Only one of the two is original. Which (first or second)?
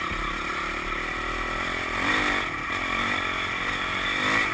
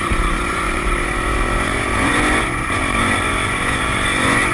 first